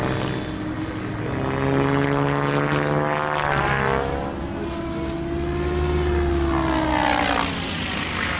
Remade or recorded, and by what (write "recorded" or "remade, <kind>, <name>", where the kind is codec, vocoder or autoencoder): recorded